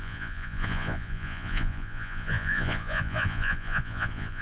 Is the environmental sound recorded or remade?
remade